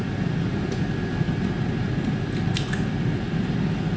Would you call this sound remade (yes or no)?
no